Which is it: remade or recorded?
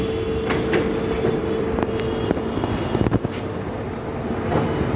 recorded